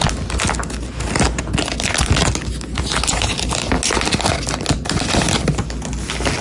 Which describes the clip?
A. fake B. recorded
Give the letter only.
B